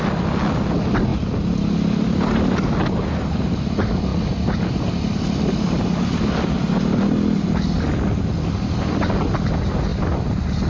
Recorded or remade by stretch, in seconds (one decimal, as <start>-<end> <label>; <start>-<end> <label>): 0.0-10.7 recorded